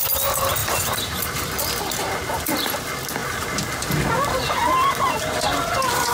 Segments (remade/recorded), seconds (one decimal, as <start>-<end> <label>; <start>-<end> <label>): 0.0-0.6 recorded; 0.6-1.5 remade; 1.5-6.1 recorded